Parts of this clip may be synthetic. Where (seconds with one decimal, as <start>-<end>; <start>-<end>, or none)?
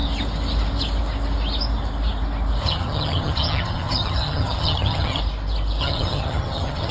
2.6-5.2; 5.8-6.9